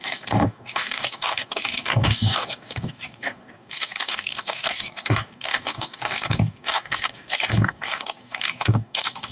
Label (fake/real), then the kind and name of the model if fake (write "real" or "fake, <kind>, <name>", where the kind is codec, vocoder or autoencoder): fake, codec, DAC